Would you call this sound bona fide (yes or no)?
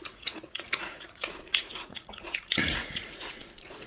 no